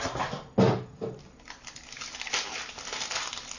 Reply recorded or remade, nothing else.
recorded